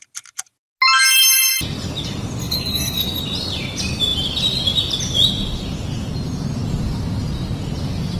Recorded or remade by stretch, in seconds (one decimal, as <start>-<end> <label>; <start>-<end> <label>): 0.0-2.4 recorded; 2.4-3.2 remade; 3.2-8.2 recorded